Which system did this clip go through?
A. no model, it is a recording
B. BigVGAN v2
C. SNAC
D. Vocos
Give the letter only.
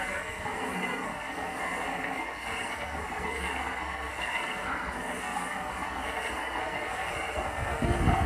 C